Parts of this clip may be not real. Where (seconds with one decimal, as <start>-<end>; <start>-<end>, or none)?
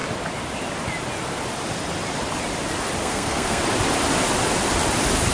3.0-3.6